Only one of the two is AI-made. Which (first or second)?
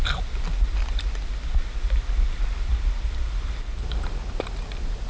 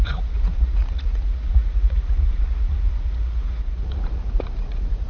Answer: second